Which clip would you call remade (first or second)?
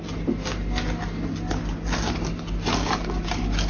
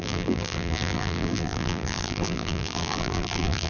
second